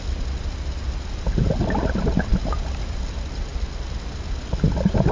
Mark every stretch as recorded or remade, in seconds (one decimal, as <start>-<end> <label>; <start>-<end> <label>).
0.0-5.1 recorded